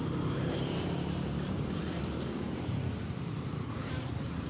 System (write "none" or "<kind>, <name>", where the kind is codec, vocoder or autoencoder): vocoder, BigVGAN v2